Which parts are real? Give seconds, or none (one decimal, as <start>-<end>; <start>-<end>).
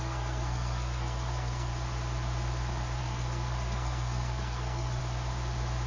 1.7-3.0; 5.0-5.9